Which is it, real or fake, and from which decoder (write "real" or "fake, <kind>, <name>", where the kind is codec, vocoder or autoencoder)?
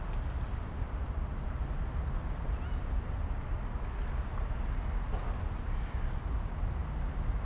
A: real